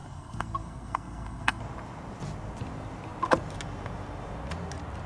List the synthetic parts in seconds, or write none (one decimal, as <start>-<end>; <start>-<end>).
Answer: 0.0-1.6